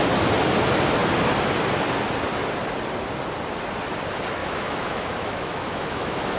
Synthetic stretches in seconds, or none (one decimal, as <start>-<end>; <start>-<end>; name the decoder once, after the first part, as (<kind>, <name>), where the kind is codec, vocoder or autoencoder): 4.4-6.4 (autoencoder, DAC-VAE)